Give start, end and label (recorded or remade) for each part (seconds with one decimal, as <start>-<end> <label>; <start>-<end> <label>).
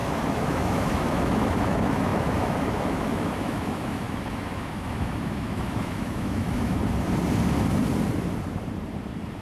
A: 0.0-6.8 remade; 6.8-9.4 recorded